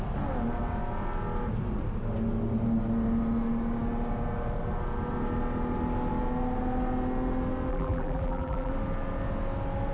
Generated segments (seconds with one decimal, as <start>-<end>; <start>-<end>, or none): 7.7-8.7